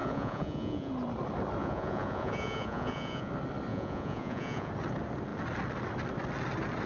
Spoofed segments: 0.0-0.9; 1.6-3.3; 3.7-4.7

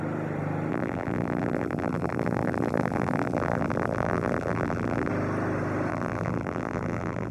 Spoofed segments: 0.7-5.1; 5.9-7.3

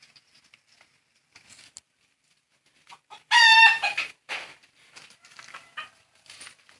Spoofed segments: none

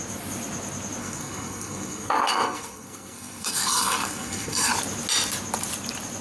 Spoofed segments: 1.0-4.7

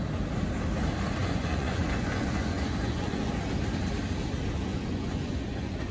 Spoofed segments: 1.2-3.3; 4.7-5.9